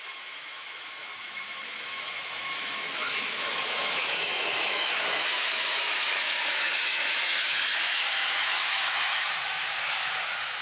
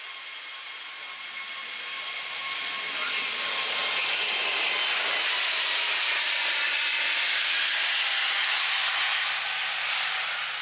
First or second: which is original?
second